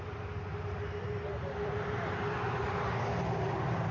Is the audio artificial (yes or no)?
no